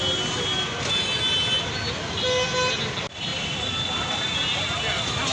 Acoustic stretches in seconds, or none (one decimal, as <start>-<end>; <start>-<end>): 0.0-3.3; 4.2-5.3